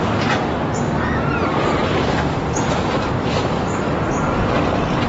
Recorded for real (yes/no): yes